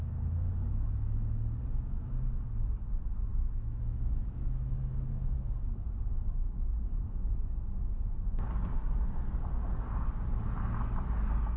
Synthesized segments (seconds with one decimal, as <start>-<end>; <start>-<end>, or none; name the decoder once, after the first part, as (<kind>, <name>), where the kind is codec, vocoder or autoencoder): 3.3-5.3 (autoencoder, DAC-VAE)